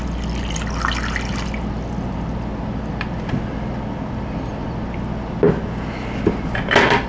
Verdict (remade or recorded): recorded